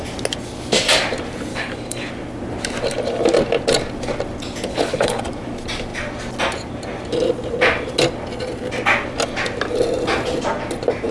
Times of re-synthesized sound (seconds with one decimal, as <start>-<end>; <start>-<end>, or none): 1.5-2.1; 4.7-5.2